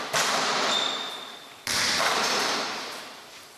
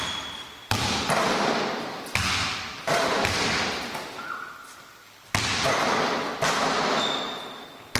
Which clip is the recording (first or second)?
second